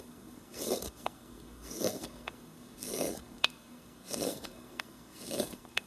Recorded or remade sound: remade